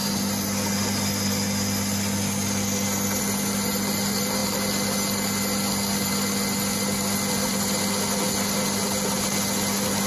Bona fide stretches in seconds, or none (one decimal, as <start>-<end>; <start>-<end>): 0.0-10.1